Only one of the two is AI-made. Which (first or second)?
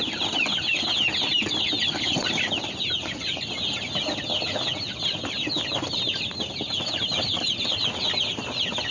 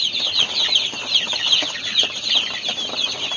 second